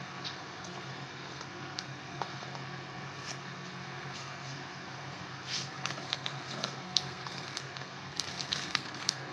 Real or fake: fake